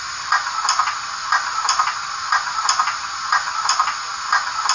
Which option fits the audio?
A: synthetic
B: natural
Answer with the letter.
B